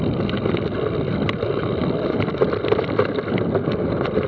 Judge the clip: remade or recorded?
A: recorded